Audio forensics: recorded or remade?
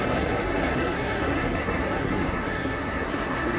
remade